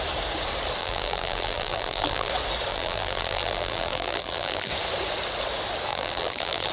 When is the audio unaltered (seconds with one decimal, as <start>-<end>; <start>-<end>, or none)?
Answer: 0.0-0.8; 2.3-2.7; 4.7-5.9